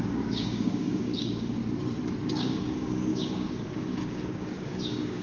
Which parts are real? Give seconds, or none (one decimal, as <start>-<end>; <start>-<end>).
1.6-2.3